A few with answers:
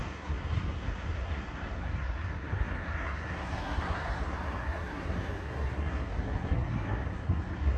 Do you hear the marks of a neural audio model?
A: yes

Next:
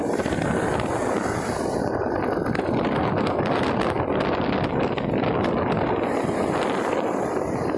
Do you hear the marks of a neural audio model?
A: no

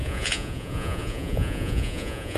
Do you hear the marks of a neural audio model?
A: yes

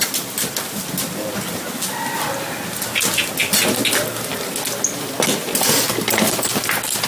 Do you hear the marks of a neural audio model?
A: no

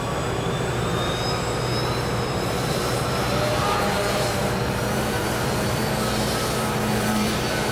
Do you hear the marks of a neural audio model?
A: yes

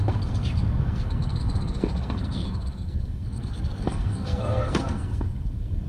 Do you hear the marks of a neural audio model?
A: yes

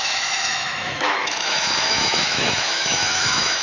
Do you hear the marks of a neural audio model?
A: yes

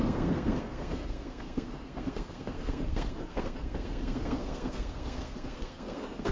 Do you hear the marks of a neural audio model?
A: yes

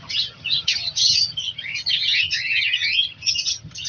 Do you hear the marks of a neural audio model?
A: yes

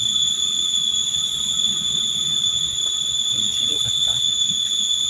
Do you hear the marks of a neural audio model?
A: yes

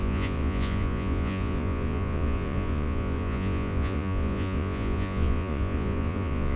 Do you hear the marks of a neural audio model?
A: yes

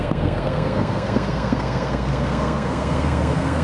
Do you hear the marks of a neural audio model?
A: yes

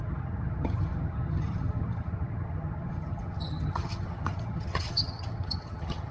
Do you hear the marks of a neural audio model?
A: yes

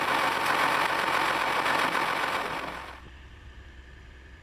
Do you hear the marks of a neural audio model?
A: yes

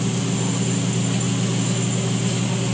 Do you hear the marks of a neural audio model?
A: no